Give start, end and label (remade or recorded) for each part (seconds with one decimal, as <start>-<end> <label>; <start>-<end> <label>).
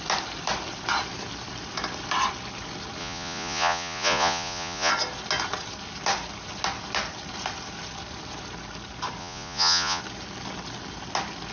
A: 0.0-3.0 recorded; 3.0-4.9 remade; 4.9-9.2 recorded; 9.2-10.0 remade; 10.0-11.5 recorded